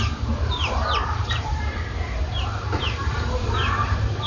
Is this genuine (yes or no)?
no